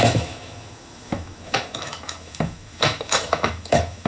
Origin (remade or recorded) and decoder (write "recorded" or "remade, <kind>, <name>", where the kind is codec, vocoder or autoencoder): remade, autoencoder, DAC-VAE